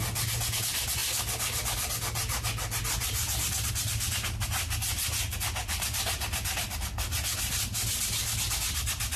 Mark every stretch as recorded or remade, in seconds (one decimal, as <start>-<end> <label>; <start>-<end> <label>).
0.0-9.2 recorded